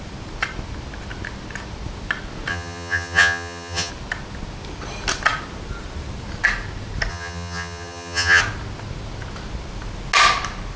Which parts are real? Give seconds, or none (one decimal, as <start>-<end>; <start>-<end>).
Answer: 0.0-2.5; 3.9-7.1; 8.4-10.8